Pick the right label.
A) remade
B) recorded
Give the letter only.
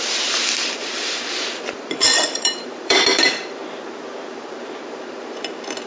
A